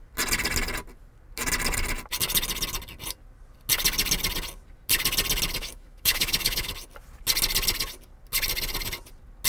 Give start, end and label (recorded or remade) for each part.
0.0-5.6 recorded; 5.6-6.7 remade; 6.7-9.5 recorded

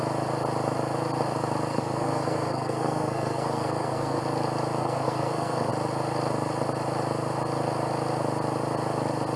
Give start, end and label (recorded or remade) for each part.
0.0-1.7 recorded; 1.7-4.2 remade; 4.2-4.8 recorded; 4.8-5.7 remade; 5.7-9.4 recorded

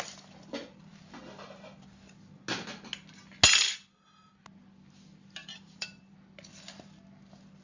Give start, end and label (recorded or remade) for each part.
0.0-5.4 recorded; 5.4-6.1 remade; 6.1-7.6 recorded

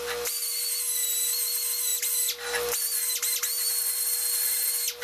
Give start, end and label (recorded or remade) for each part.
0.0-5.0 recorded

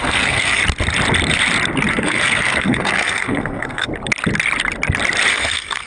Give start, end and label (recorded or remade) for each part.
0.0-0.6 remade; 0.6-1.9 recorded; 1.9-3.9 remade; 3.9-5.3 recorded; 5.3-5.9 remade

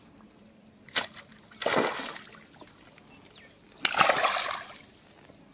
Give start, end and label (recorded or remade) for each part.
0.0-5.5 recorded